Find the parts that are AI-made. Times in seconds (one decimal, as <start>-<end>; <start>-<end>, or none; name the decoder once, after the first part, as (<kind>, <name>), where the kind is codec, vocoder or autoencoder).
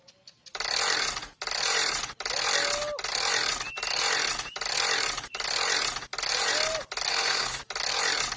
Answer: 7.1-7.6 (codec, SNAC)